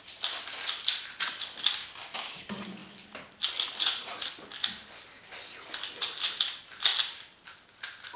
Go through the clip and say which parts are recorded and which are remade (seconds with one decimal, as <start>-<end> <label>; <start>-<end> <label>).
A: 0.0-1.8 recorded; 1.8-2.4 remade; 2.4-8.2 recorded